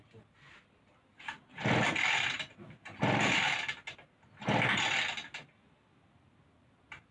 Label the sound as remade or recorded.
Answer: recorded